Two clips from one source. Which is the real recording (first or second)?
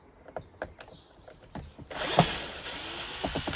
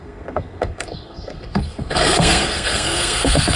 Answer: first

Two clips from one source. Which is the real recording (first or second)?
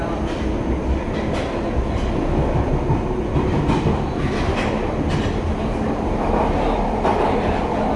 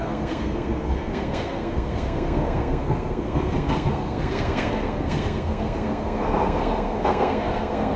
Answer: first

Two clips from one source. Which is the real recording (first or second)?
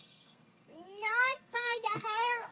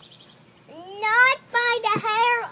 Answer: second